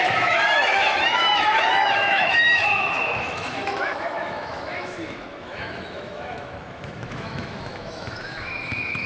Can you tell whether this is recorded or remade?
remade